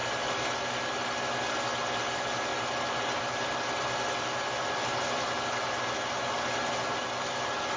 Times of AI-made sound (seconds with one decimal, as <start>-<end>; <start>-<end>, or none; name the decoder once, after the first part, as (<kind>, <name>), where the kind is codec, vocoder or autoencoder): none